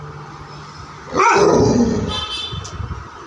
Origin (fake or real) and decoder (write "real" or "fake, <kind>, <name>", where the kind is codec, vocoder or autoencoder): real